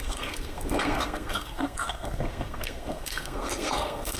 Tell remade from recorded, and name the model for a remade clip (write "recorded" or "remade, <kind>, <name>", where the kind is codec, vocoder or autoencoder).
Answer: remade, codec, SNAC